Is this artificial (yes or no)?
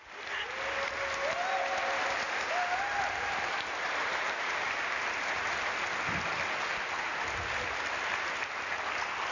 no